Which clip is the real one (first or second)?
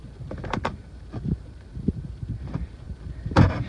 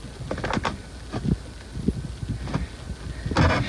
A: second